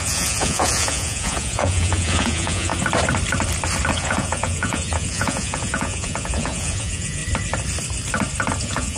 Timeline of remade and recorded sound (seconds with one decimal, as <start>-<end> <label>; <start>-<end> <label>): 0.0-2.7 remade; 2.7-3.9 recorded; 3.9-7.2 remade; 7.2-8.6 recorded; 8.6-9.0 remade